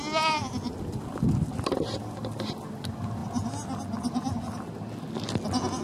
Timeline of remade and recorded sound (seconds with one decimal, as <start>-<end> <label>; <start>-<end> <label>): 0.0-5.8 recorded